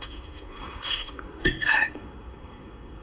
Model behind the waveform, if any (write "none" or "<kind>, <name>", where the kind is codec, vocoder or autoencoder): codec, SNAC